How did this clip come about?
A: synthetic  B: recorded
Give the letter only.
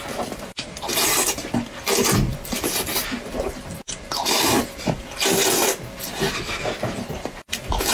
A